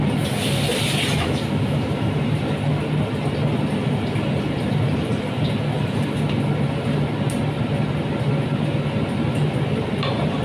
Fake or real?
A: real